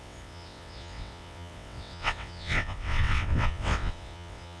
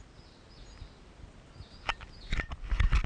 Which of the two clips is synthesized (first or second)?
first